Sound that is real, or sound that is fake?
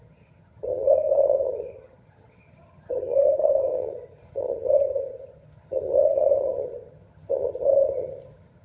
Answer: fake